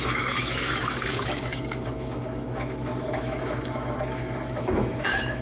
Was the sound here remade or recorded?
remade